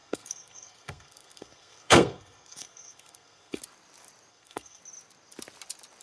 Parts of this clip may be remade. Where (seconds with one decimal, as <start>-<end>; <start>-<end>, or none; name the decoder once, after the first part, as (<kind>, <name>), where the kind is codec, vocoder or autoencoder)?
0.0-3.6 (codec, SNAC); 4.3-4.8